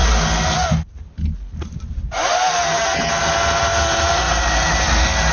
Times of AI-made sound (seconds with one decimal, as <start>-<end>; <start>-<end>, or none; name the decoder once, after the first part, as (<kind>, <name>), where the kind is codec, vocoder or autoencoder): none